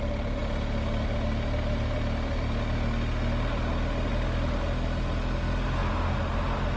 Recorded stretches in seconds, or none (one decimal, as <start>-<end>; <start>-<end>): 0.0-6.8